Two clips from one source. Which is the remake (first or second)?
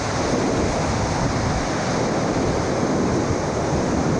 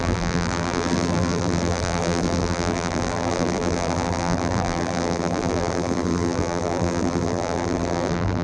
second